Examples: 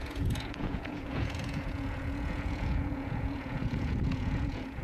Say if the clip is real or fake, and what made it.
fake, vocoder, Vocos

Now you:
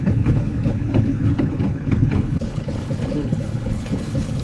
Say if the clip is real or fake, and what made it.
fake, codec, HILCodec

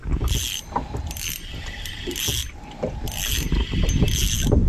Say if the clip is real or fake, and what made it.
real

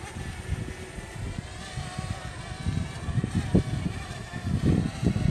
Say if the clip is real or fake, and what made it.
real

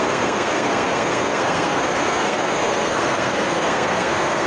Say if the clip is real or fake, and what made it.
fake, codec, SNAC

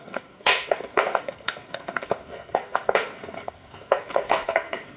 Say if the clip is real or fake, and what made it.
fake, codec, SNAC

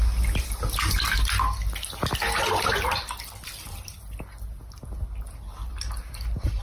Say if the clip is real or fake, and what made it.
real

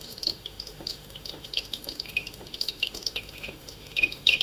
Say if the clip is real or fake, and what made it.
fake, autoencoder, DAC-VAE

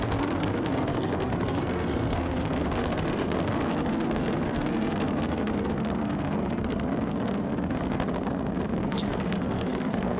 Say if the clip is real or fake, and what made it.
fake, codec, SNAC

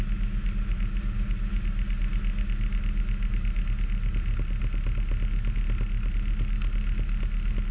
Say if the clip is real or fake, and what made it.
real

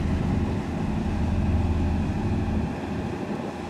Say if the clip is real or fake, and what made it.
real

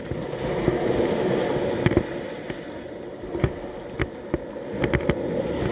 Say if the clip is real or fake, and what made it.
real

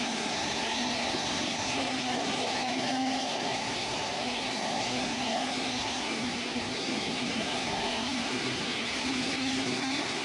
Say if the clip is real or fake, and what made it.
fake, codec, SNAC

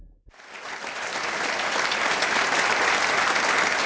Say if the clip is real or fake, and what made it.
real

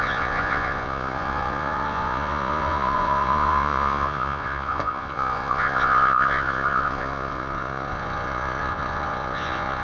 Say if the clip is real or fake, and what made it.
fake, vocoder, Vocos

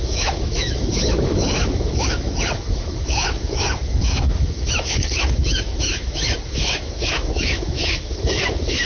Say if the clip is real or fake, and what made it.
fake, autoencoder, DAC-VAE